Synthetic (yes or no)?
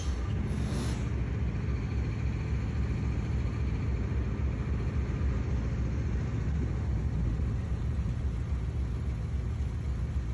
no